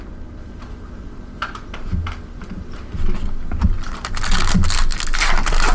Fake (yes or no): no